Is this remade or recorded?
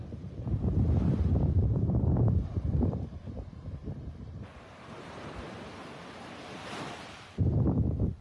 remade